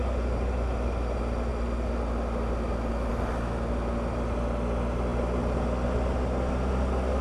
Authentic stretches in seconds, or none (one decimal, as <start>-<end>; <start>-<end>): 0.0-7.2